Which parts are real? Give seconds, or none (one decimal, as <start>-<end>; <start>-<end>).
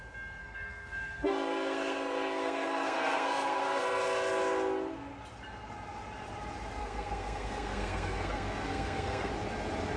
0.0-0.4; 3.8-6.8; 9.3-10.0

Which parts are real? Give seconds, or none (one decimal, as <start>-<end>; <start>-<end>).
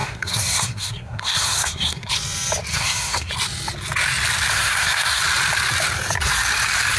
2.1-2.7; 3.3-4.5; 5.2-7.0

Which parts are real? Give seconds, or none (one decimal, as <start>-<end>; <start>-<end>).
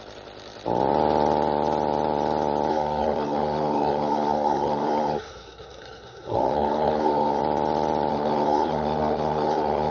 0.0-2.7; 7.4-8.1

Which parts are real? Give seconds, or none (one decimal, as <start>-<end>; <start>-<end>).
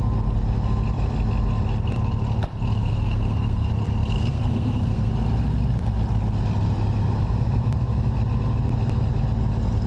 0.0-2.8; 3.7-4.2; 5.1-9.9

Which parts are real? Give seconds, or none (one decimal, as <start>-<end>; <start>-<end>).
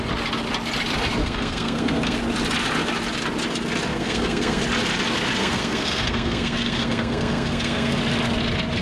0.0-1.2; 2.2-3.9; 4.6-5.4; 8.0-8.8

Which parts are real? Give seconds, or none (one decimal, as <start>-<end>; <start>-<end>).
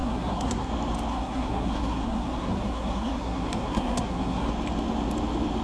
0.7-1.1; 4.5-5.6